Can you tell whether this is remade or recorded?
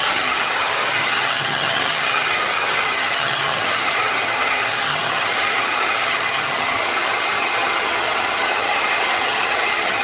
remade